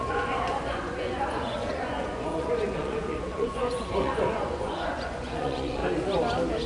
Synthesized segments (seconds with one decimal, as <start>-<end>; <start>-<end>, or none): 0.0-5.8